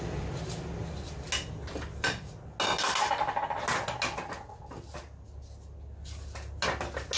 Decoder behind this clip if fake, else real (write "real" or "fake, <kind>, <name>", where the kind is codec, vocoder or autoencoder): real